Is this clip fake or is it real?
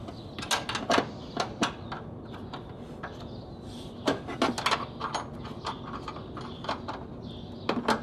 real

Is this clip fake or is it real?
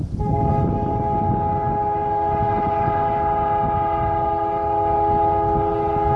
real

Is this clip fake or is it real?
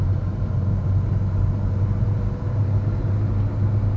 real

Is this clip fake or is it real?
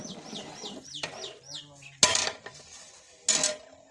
real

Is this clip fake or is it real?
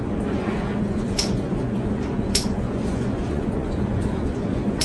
fake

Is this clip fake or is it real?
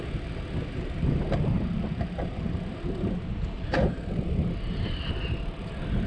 real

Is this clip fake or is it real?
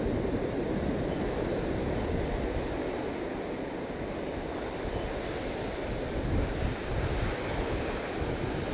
real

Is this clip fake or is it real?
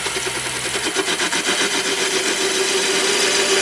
real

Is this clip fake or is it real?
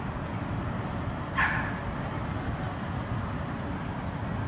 real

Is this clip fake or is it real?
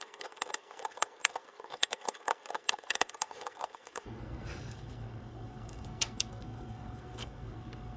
fake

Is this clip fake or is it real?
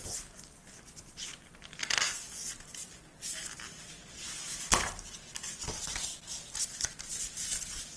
real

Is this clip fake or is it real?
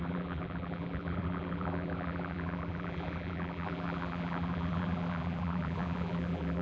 fake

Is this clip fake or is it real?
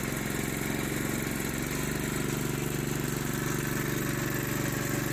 real